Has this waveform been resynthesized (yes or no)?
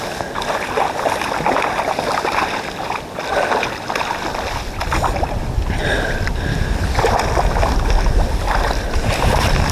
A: no